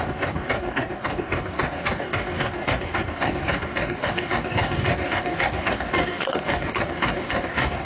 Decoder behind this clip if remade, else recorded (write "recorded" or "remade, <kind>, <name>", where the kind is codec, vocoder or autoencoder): remade, codec, DAC